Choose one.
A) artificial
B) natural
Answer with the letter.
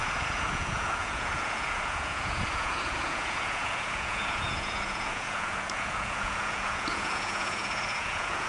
A